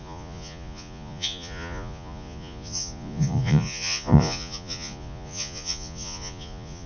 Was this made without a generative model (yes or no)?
no